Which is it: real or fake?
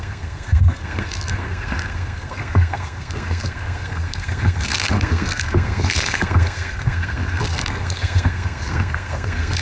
fake